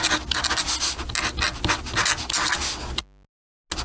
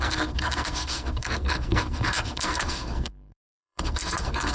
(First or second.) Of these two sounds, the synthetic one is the second